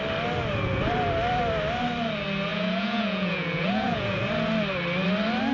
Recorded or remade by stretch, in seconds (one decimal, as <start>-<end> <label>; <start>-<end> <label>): 0.0-2.5 recorded; 2.5-4.2 remade; 4.2-5.5 recorded